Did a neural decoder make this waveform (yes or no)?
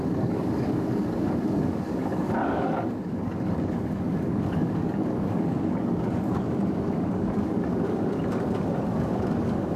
yes